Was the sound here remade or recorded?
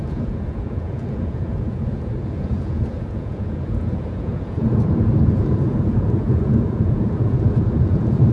remade